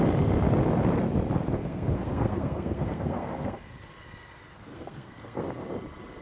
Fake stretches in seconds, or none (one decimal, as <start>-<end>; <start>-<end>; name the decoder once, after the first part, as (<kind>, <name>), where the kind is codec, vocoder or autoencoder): 1.6-3.7 (codec, SNAC); 4.7-5.5